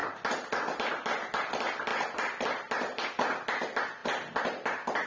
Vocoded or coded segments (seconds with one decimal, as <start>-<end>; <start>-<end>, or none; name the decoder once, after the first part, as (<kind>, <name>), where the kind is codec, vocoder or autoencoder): none